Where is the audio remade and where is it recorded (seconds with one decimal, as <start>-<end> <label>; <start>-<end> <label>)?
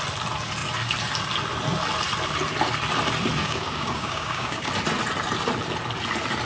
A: 0.0-3.4 recorded; 3.4-4.7 remade; 4.7-6.5 recorded